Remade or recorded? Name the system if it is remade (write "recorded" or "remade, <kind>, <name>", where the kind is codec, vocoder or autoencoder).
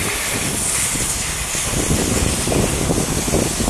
recorded